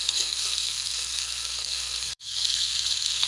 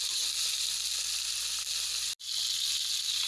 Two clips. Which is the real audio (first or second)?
second